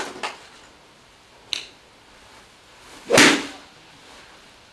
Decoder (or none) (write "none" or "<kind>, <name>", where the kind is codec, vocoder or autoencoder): none